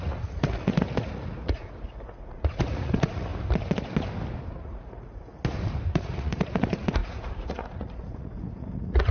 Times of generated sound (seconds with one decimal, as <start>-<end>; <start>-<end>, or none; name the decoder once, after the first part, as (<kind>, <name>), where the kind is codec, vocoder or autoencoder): 0.0-3.3 (vocoder, Vocos); 4.5-5.3; 5.9-9.1

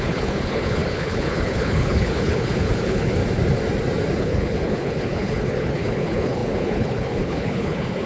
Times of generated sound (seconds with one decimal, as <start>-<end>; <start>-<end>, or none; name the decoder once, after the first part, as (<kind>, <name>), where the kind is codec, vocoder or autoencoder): 0.0-3.2 (codec, HILCodec); 4.2-8.1

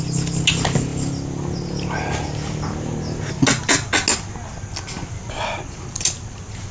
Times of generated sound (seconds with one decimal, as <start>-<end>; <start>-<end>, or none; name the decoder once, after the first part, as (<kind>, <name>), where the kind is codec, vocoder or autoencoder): none